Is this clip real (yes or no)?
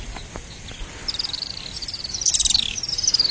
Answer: yes